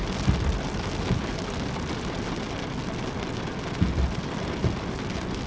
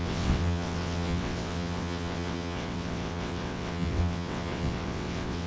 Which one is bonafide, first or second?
first